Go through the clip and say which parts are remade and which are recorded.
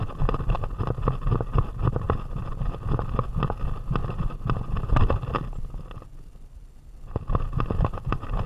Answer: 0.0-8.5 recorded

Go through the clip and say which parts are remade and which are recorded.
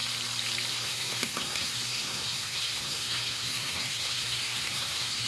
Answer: 0.0-0.7 recorded; 0.7-5.3 remade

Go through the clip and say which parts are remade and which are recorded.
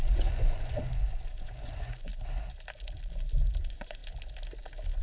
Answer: 0.0-2.1 remade; 2.1-3.6 recorded; 3.6-4.0 remade; 4.0-5.0 recorded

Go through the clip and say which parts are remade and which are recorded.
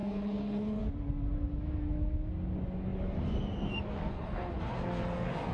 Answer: 0.0-0.8 remade; 0.8-4.1 recorded; 4.1-4.6 remade; 4.6-5.5 recorded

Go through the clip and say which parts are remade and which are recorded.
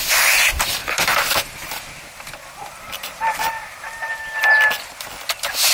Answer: 0.0-0.8 recorded; 0.8-4.2 remade; 4.2-5.7 recorded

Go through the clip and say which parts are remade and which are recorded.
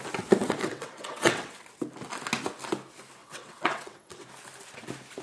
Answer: 0.0-0.4 recorded; 0.4-1.6 remade; 1.6-3.2 recorded; 3.2-4.3 remade; 4.3-5.2 recorded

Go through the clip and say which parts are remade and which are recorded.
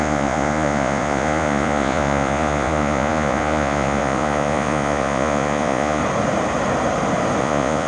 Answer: 0.0-6.0 remade; 6.0-7.4 recorded; 7.4-7.9 remade